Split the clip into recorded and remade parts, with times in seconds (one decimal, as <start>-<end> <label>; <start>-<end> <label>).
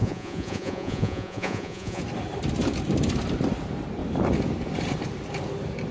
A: 0.0-2.0 remade; 2.0-5.9 recorded